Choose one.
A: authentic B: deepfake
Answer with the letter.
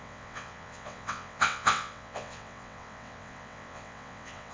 B